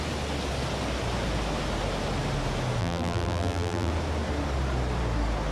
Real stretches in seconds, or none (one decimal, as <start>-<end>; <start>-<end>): 0.0-2.8; 3.9-5.5